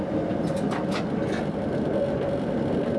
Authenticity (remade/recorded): recorded